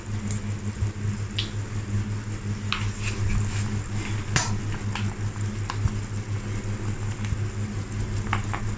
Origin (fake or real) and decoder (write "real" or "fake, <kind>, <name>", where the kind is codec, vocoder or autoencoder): real